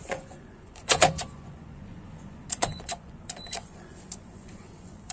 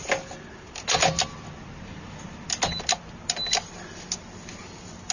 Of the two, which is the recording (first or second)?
second